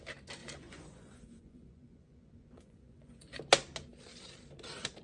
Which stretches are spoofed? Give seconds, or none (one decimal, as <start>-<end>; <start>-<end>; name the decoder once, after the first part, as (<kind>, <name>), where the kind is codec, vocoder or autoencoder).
0.4-3.4 (vocoder, Vocos)